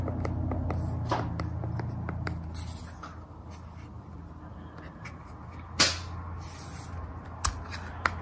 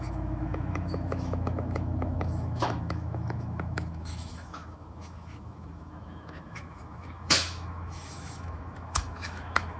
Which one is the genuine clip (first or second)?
first